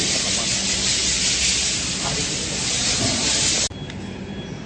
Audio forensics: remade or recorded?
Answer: recorded